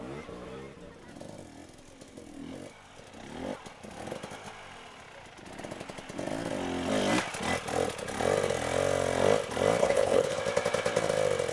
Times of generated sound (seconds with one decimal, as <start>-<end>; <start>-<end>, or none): 9.8-10.4